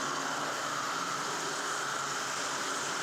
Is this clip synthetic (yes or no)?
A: no